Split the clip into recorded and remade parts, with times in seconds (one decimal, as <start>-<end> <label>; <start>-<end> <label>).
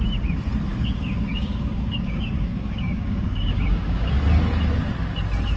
0.0-0.7 recorded; 0.7-4.1 remade; 4.1-5.6 recorded